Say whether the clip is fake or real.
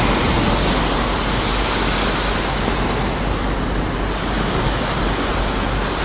real